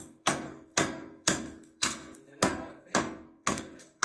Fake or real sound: fake